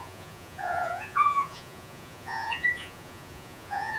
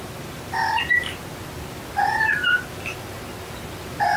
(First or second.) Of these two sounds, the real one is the second